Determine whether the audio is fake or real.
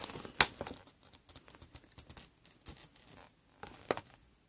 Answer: real